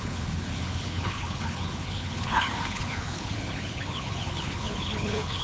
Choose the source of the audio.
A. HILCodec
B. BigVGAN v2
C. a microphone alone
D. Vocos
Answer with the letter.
A